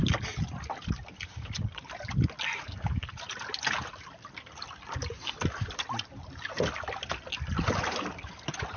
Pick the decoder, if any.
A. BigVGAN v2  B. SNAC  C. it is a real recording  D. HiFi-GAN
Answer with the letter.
C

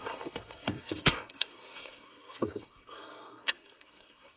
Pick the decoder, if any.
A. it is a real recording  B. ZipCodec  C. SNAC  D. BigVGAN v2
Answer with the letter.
C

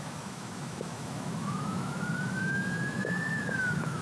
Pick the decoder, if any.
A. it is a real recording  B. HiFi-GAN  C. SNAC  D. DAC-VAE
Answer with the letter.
D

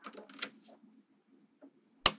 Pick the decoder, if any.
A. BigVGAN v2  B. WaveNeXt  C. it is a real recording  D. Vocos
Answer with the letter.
C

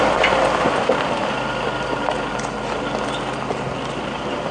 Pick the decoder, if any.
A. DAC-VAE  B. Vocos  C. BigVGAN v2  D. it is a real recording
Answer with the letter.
D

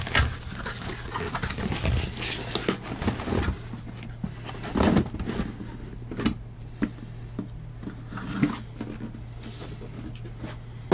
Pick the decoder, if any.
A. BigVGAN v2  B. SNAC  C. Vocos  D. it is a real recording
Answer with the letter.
D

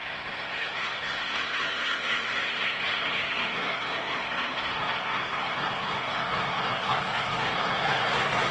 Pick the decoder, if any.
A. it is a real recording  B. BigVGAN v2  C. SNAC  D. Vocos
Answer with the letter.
C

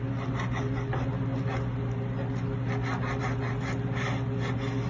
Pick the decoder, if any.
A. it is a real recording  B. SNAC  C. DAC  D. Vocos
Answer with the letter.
A